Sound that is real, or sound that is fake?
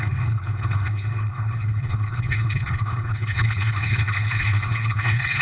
fake